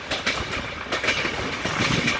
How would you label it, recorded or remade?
recorded